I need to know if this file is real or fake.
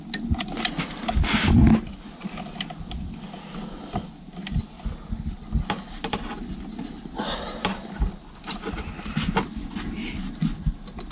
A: real